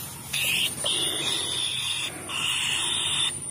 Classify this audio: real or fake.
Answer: fake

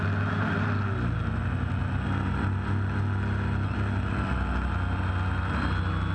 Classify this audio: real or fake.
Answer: real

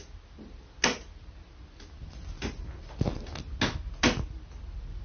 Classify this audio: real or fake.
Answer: real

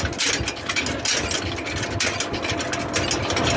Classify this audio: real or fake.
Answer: real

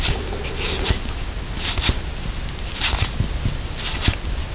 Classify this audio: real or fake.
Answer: real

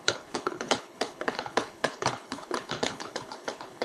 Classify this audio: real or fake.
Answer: fake